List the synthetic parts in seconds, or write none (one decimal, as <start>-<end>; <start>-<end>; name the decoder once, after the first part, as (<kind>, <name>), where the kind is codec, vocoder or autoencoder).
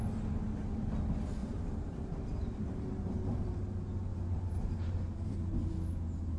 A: 1.4-3.6 (vocoder, BigVGAN v2); 4.1-5.7